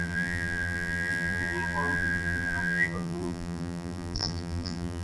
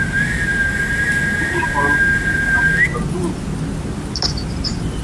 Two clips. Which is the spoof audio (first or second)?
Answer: first